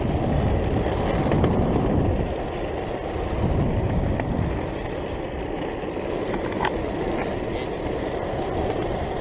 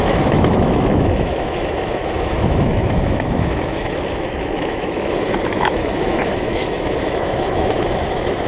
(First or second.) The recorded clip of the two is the first